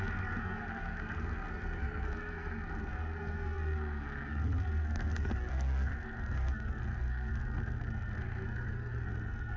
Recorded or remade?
remade